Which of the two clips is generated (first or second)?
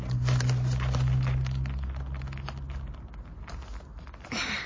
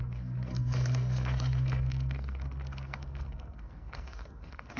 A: second